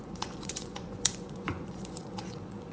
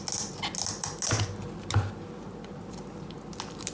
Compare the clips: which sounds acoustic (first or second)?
second